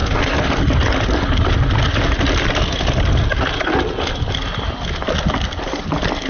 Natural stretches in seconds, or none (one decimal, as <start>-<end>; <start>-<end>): 0.0-6.3